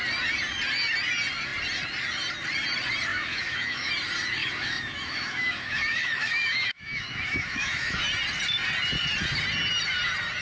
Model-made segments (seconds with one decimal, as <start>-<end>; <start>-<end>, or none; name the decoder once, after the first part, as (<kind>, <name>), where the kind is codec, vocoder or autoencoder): 3.1-3.9 (autoencoder, DAC-VAE); 4.4-8.0